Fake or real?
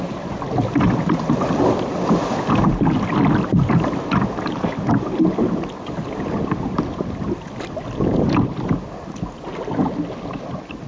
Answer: real